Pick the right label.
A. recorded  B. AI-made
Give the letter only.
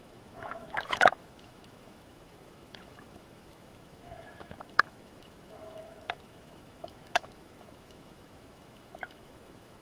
B